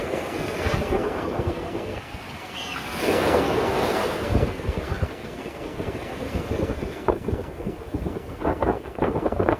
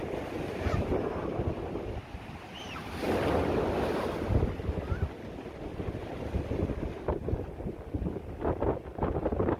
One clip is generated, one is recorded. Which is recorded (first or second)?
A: second